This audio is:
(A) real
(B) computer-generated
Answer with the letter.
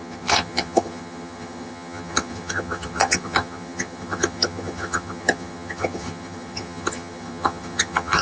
B